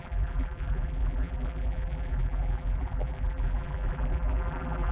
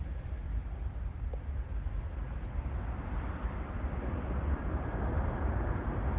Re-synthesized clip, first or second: first